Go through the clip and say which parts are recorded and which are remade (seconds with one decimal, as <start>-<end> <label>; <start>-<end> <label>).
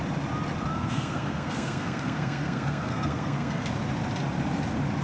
0.0-0.7 recorded; 0.7-3.7 remade; 3.7-5.0 recorded